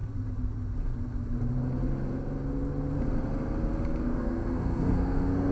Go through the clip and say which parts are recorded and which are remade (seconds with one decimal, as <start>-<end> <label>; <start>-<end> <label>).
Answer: 0.0-4.0 recorded; 4.0-5.5 remade